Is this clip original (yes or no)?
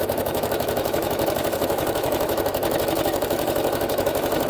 no